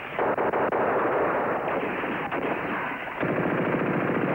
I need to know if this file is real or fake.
real